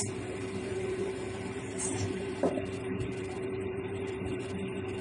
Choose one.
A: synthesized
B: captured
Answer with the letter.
A